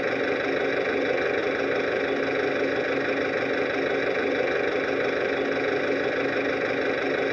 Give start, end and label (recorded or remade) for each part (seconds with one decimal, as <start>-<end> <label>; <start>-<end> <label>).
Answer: 0.0-7.3 recorded